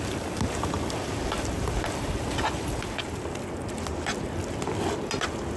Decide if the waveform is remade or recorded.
recorded